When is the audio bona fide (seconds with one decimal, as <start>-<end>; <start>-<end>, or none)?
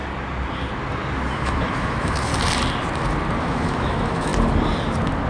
0.0-1.3; 2.3-3.4; 4.3-5.3